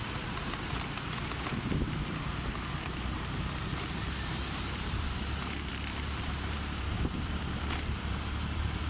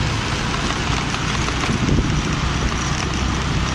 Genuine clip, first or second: second